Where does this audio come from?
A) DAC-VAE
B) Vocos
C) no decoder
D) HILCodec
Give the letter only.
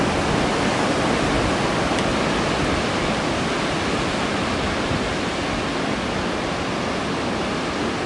C